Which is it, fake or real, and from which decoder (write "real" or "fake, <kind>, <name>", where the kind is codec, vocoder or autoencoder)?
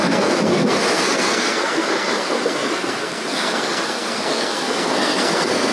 fake, codec, SNAC